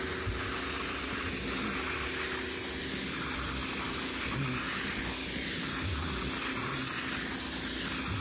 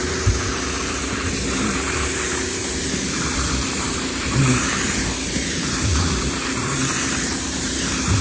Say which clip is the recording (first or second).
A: first